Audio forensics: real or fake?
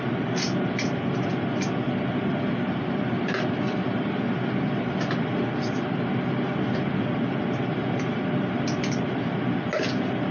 real